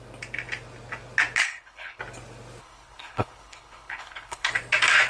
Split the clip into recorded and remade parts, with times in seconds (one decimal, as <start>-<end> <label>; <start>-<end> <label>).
0.0-1.4 recorded; 1.4-2.0 remade; 2.0-2.6 recorded; 2.6-4.5 remade; 4.5-5.1 recorded

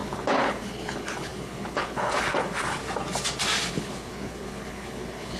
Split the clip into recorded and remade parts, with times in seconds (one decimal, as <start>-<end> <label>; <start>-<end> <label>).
0.0-2.8 remade; 2.8-3.7 recorded; 3.7-5.4 remade

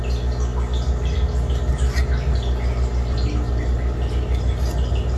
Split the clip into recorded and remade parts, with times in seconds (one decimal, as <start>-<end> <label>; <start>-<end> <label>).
0.0-5.2 recorded

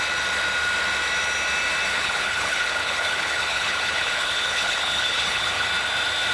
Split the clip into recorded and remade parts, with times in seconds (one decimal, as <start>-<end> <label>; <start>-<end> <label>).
0.0-1.9 recorded; 1.9-5.7 remade; 5.7-6.3 recorded

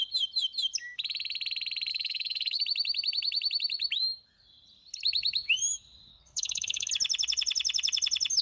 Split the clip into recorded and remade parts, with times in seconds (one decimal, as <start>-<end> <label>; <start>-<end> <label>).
0.0-1.9 recorded; 1.9-2.6 remade; 2.6-6.1 recorded; 6.1-6.9 remade; 6.9-8.4 recorded

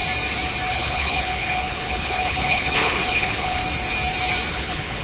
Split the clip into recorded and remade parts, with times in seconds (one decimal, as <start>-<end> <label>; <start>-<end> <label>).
0.0-0.7 recorded; 0.7-3.6 remade; 3.6-4.5 recorded; 4.5-5.0 remade

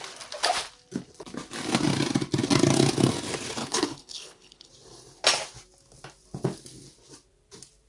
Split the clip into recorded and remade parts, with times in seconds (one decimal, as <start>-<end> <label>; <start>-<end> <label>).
0.0-3.6 recorded; 3.6-4.7 remade; 4.7-7.9 recorded

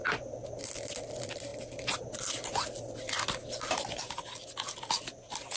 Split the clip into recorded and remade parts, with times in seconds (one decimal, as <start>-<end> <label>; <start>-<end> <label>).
0.0-5.6 recorded